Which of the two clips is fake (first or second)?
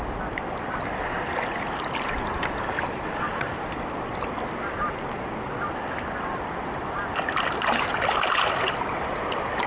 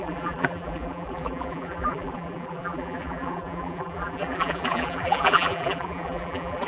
second